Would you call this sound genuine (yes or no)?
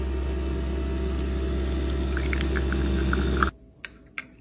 yes